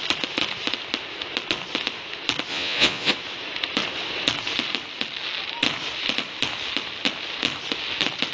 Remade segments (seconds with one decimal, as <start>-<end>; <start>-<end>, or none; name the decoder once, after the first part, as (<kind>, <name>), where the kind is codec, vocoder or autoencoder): 2.5-3.1 (vocoder, Vocos)